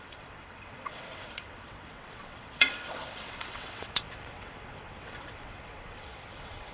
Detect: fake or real fake